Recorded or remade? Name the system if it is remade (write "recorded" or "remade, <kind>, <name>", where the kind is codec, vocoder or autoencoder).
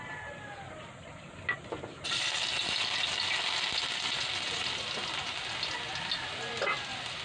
recorded